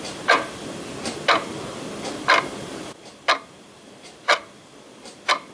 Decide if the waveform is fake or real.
real